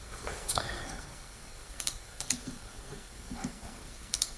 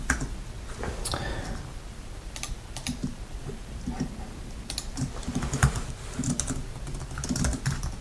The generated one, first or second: first